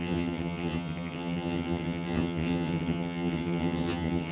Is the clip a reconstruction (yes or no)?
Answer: yes